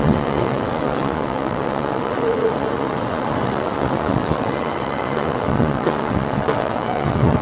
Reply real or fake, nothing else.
fake